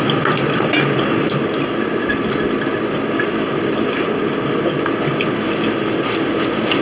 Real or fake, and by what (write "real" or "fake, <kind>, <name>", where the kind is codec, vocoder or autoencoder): real